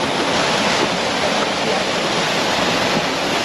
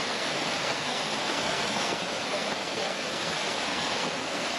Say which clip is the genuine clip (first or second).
first